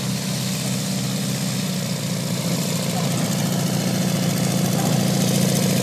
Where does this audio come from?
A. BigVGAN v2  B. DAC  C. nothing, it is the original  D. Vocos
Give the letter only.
C